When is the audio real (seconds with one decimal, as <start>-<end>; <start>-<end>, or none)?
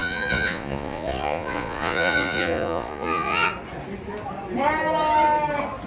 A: 3.5-5.9